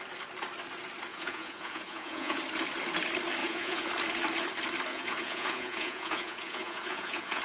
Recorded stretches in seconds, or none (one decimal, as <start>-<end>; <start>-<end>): 0.0-1.1; 2.4-3.4; 3.9-4.9